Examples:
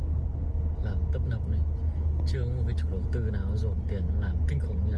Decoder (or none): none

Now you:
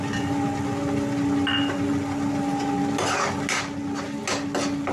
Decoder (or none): none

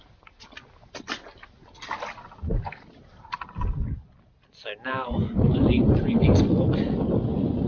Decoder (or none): none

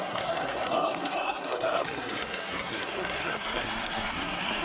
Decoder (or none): codec, SNAC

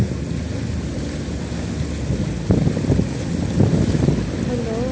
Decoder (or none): none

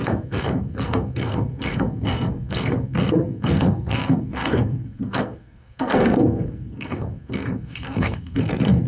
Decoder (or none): codec, SNAC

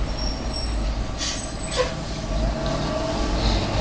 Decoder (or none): none